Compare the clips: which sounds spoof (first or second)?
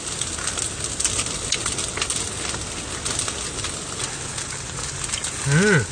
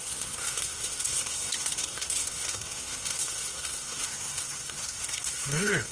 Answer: second